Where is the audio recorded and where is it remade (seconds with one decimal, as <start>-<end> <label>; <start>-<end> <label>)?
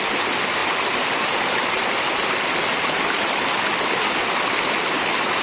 0.0-5.4 recorded